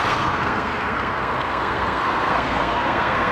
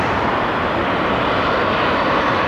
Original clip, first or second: second